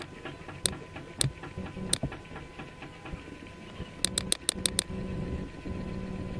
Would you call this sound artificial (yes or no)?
no